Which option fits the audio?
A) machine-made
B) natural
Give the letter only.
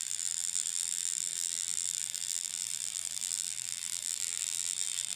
A